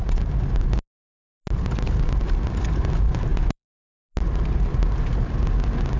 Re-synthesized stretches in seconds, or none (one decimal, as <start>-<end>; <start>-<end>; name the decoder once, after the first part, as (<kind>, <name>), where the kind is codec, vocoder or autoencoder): 3.3-4.1 (vocoder, BigVGAN v2)